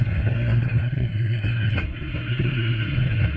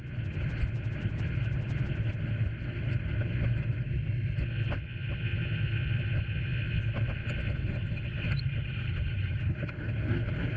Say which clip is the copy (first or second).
first